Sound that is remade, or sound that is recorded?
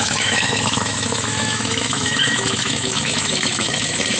remade